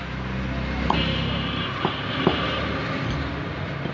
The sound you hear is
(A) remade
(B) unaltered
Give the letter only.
B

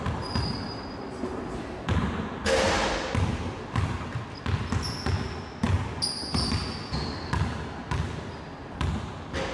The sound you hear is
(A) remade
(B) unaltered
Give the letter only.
B